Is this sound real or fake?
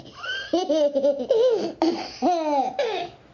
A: real